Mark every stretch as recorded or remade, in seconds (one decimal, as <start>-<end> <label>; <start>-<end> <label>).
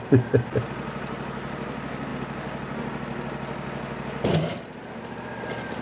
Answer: 0.0-5.8 recorded